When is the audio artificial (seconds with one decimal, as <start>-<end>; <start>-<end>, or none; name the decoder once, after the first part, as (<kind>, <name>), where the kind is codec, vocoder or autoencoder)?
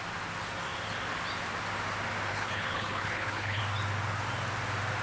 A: 2.3-3.6 (codec, HILCodec)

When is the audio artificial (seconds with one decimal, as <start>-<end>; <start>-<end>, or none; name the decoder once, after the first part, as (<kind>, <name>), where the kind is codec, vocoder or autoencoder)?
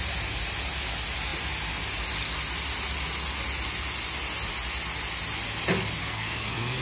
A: 6.0-6.8 (codec, SNAC)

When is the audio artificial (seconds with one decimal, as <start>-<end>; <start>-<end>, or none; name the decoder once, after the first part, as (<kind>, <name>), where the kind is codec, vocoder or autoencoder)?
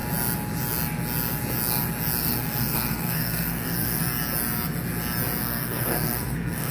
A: 2.2-4.0 (codec, SNAC); 5.4-6.7